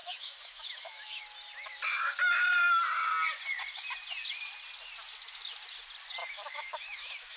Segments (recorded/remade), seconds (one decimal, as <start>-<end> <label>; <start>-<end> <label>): 0.0-1.2 remade; 1.2-6.2 recorded; 6.2-7.4 remade